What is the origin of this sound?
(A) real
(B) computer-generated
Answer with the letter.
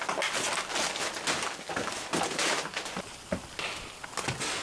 A